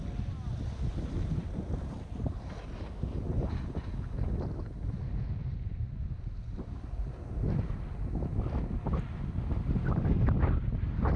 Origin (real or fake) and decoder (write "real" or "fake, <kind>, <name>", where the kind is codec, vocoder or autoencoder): real